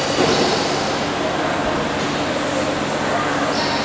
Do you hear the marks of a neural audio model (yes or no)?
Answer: no